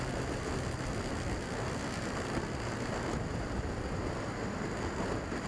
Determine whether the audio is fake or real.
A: real